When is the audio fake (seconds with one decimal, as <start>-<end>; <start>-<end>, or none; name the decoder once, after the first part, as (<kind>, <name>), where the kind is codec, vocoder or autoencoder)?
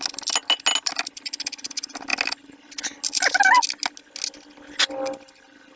none